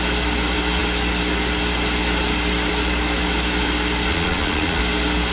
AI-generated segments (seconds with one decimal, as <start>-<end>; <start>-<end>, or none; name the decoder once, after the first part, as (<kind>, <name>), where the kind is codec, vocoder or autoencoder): 4.1-4.8 (vocoder, Vocos)

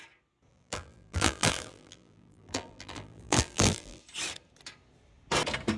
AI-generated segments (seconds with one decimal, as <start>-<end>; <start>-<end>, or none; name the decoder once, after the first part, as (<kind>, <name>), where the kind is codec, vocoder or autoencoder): 0.5-4.0 (vocoder, BigVGAN v2)

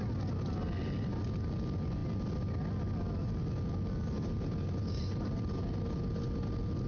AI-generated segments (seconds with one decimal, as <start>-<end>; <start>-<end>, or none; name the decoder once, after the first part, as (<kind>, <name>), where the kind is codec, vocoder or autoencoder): none